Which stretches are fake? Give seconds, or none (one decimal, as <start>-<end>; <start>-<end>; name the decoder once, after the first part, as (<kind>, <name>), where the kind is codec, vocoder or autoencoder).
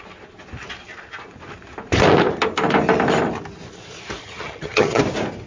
4.2-5.0 (vocoder, HiFi-GAN)